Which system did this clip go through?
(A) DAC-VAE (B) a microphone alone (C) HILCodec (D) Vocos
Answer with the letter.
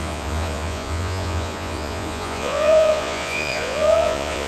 D